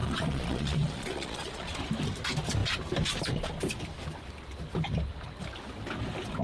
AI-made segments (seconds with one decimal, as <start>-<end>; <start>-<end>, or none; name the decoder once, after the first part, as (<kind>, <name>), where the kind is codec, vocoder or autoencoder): 0.0-1.8 (vocoder, Vocos)

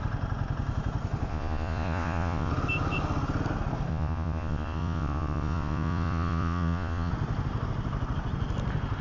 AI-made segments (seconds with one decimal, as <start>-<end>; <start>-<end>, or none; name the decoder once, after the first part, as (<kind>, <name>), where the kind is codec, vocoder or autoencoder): 1.3-2.5 (vocoder, Vocos); 3.9-7.1